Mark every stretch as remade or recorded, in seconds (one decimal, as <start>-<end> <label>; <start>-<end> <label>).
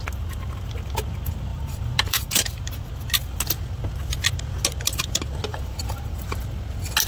0.0-1.5 recorded; 1.5-2.9 remade; 2.9-5.5 recorded; 5.5-6.4 remade; 6.4-7.1 recorded